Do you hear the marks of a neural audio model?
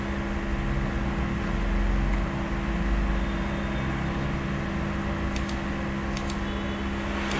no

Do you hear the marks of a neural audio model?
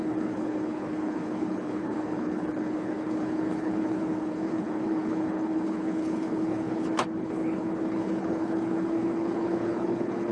yes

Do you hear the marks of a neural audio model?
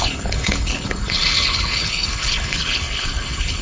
yes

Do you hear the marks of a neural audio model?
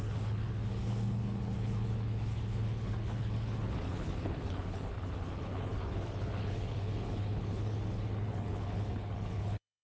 yes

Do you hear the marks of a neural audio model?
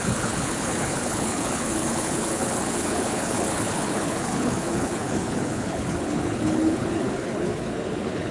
yes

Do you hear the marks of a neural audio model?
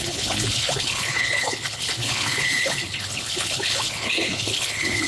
yes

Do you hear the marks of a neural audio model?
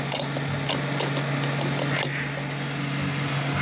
no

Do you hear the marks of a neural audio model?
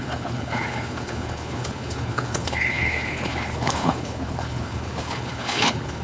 yes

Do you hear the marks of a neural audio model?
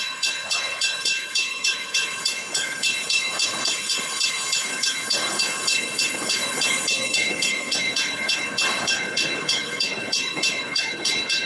yes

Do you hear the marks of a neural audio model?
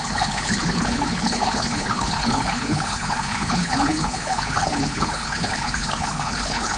yes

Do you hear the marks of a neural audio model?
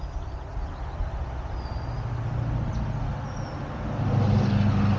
no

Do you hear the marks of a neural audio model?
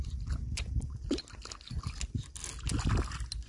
no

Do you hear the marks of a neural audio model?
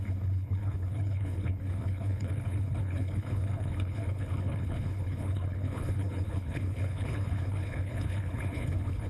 yes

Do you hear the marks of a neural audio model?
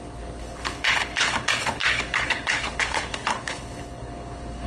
yes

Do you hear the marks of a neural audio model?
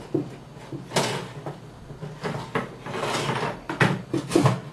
no